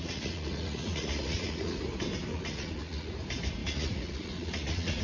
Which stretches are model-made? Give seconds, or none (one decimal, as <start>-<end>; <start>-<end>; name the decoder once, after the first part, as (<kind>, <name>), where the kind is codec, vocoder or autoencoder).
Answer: 0.0-1.8 (vocoder, Vocos); 2.3-3.1; 3.6-5.0